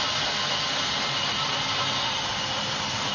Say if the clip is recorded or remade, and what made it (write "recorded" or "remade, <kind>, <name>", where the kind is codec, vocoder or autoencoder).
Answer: recorded